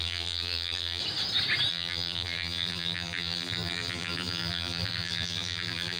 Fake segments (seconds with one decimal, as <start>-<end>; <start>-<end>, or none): 0.0-1.0; 1.7-6.0